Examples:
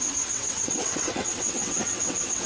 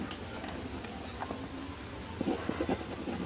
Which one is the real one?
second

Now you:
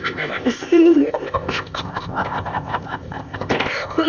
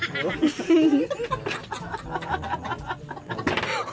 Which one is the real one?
second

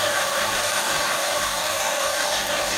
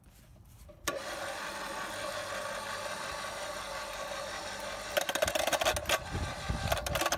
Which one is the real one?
second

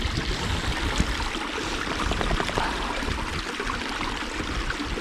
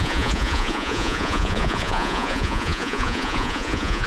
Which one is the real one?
first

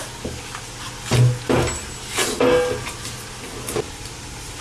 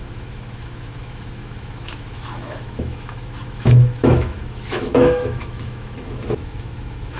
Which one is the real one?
first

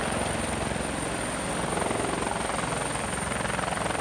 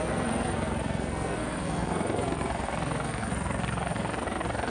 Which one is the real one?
first